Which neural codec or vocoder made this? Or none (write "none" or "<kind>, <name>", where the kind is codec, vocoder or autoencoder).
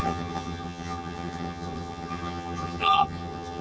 vocoder, HiFi-GAN